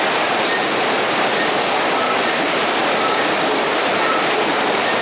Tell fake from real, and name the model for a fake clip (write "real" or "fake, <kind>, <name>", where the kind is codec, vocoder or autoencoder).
real